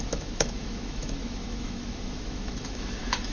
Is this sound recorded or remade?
remade